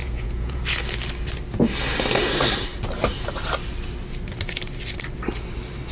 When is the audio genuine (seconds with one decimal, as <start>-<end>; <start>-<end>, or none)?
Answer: 0.6-5.9